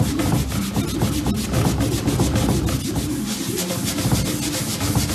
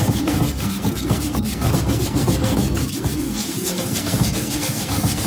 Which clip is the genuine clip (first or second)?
first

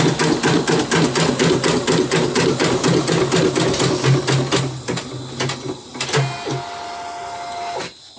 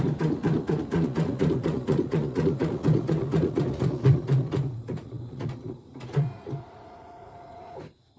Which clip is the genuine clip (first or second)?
first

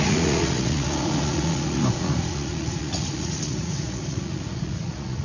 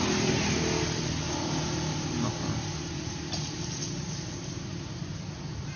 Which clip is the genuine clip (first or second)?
second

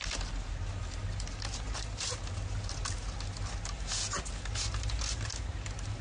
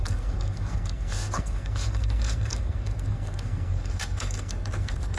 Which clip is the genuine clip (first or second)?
first